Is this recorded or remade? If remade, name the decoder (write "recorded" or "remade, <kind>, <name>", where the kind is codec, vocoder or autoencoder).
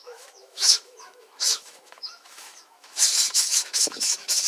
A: remade, autoencoder, DAC-VAE